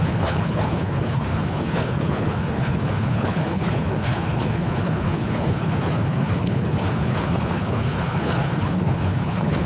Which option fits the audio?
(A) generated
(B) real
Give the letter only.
A